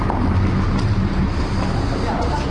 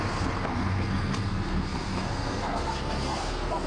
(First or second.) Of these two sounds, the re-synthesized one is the second